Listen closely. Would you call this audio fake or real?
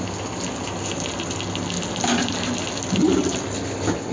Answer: real